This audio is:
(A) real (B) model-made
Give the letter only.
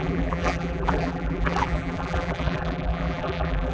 B